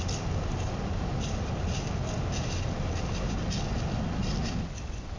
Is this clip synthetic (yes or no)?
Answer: no